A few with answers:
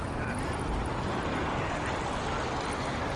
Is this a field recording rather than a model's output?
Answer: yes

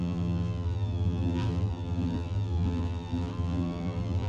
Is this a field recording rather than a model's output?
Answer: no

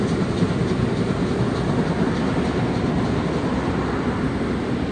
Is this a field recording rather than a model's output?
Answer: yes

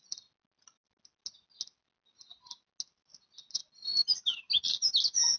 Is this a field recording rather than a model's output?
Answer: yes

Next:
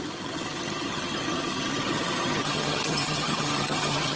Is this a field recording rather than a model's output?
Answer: no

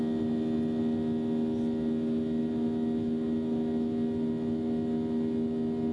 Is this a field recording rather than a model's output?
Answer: yes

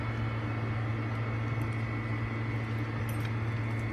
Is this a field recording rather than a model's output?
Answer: yes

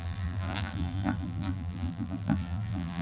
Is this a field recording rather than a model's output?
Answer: no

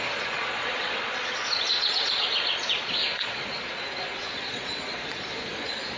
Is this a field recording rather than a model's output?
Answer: no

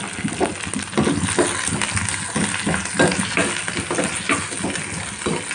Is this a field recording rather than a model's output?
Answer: yes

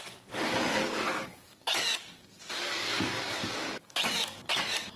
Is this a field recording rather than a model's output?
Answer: no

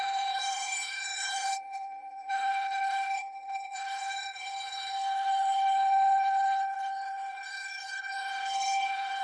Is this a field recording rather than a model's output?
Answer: no